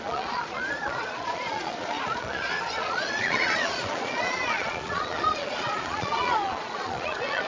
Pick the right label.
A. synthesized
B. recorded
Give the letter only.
A